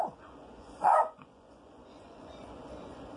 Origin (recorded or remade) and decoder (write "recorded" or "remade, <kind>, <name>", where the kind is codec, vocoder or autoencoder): remade, vocoder, Vocos